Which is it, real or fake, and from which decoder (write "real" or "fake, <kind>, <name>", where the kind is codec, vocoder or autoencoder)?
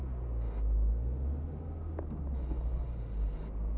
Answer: real